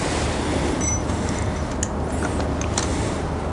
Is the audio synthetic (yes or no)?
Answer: no